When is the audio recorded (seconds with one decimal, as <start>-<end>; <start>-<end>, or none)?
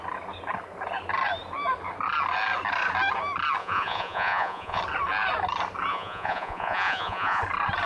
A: 0.0-3.6; 4.8-5.9; 7.4-7.9